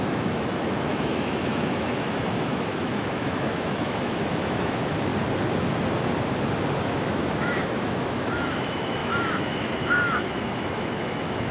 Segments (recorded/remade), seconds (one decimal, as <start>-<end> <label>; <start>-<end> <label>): 0.0-5.1 remade; 5.1-6.8 recorded; 6.8-11.5 remade